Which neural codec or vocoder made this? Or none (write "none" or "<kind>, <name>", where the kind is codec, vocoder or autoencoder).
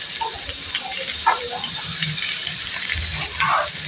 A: vocoder, BigVGAN v2